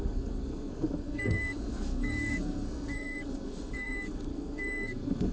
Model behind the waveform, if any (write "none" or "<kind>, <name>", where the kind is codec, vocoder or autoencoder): codec, SNAC